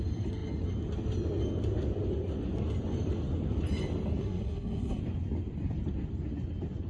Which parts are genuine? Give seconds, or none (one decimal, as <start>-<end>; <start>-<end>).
0.0-4.2; 5.0-6.9